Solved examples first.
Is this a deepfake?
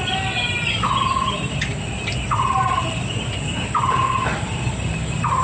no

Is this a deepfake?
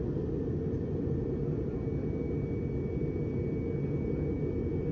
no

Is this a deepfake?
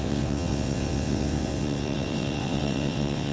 yes